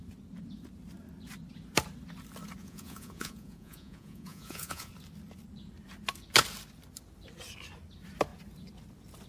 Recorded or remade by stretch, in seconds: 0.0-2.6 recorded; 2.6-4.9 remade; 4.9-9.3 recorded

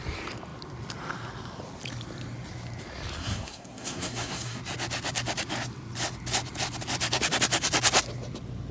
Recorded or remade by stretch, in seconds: 0.0-3.2 recorded; 3.2-4.6 remade; 4.6-8.7 recorded

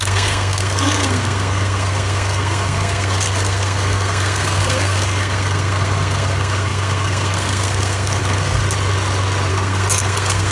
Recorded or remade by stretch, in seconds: 0.0-8.6 remade; 8.6-9.5 recorded; 9.5-10.5 remade

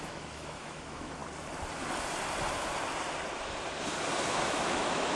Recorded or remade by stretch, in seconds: 0.0-1.2 remade; 1.2-4.3 recorded; 4.3-5.2 remade